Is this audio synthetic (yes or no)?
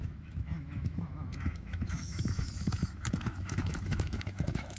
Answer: yes